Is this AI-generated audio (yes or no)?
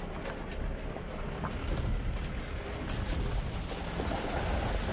no